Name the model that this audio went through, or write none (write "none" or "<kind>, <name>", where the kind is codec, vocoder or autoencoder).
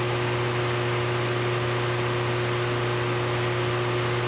none